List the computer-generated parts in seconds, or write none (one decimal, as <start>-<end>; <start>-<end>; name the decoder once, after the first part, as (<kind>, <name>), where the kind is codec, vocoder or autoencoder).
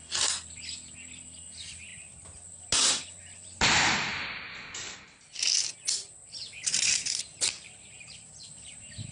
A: none